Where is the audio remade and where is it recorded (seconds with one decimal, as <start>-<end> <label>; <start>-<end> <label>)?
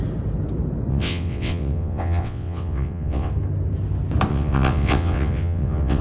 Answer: 0.0-0.9 recorded; 0.9-3.3 remade; 3.3-4.3 recorded; 4.3-6.0 remade